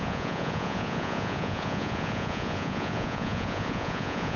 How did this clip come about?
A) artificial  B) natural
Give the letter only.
A